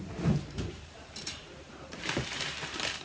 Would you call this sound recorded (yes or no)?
no